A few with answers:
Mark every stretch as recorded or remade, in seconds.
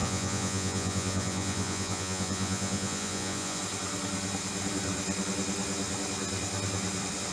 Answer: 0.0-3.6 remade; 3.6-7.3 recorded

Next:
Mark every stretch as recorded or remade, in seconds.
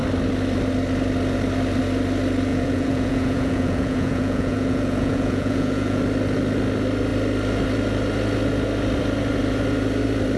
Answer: 0.0-2.5 recorded; 2.5-6.0 remade; 6.0-10.4 recorded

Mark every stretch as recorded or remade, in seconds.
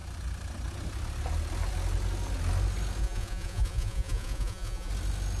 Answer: 0.0-3.0 recorded; 3.0-4.9 remade; 4.9-5.4 recorded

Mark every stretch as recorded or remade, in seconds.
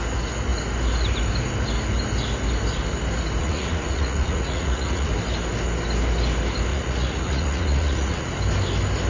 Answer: 0.0-3.4 recorded; 3.4-5.1 remade; 5.1-6.7 recorded; 6.7-8.3 remade; 8.3-9.1 recorded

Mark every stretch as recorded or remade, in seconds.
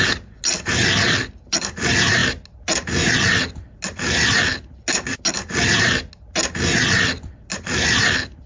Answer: 0.0-8.5 recorded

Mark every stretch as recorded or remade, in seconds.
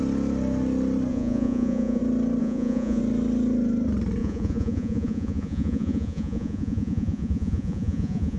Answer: 0.0-1.1 recorded; 1.1-2.0 remade; 2.0-2.4 recorded; 2.4-3.0 remade; 3.0-4.2 recorded; 4.2-8.4 remade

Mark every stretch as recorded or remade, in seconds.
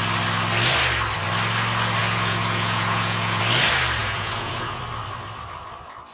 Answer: 0.0-2.0 recorded; 2.0-3.4 remade; 3.4-4.0 recorded; 4.0-4.8 remade; 4.8-6.1 recorded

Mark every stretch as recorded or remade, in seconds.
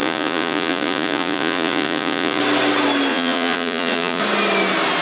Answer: 0.0-2.4 remade; 2.4-3.1 recorded; 3.1-4.2 remade; 4.2-5.0 recorded